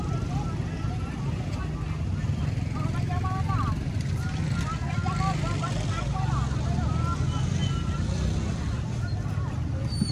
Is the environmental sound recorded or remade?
recorded